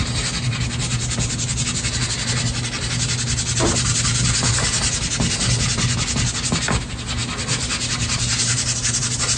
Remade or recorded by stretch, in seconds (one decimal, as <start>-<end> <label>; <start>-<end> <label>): 0.0-9.4 recorded